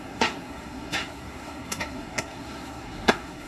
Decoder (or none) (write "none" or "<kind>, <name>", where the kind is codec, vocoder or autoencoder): codec, SNAC